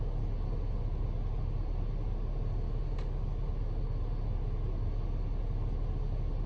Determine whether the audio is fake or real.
real